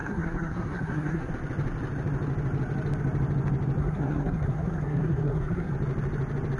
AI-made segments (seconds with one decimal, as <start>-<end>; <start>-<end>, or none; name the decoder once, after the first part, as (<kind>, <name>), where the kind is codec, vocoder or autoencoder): 0.0-1.3 (codec, SNAC); 3.8-5.7